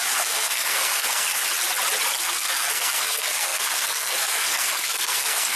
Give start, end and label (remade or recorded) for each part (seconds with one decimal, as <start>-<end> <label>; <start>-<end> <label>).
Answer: 0.0-1.4 remade; 1.4-2.2 recorded; 2.2-5.6 remade